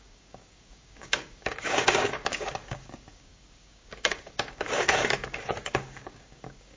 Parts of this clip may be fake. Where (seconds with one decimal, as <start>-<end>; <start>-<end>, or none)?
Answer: 0.0-6.8